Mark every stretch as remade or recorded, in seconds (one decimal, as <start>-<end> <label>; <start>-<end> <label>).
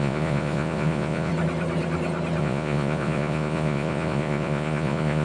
0.0-1.3 remade; 1.3-2.4 recorded; 2.4-5.2 remade